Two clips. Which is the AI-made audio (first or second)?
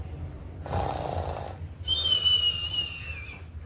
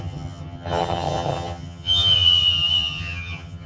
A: second